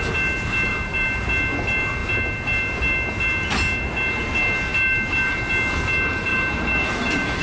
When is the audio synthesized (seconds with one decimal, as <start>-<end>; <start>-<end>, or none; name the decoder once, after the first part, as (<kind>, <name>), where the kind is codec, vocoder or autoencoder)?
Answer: 0.7-1.2 (vocoder, BigVGAN v2); 6.3-7.4